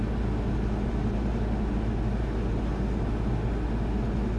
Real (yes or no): yes